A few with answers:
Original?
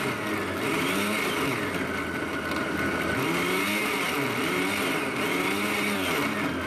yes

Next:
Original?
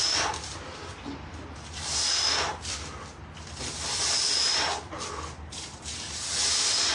yes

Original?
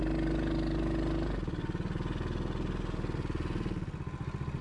yes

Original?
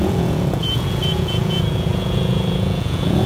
no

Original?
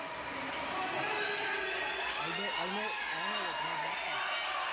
yes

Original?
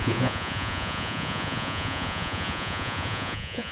no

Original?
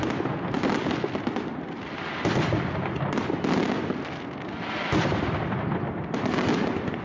yes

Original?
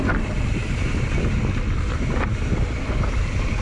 yes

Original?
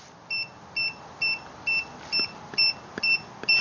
yes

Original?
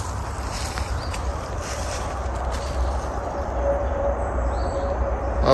no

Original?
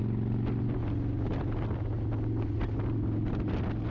yes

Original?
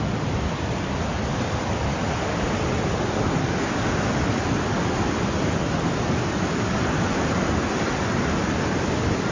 yes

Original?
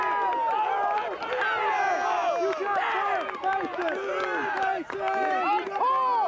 yes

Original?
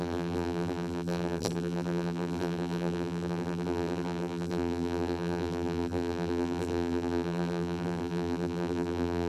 no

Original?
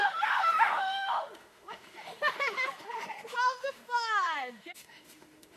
no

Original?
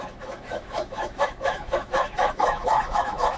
no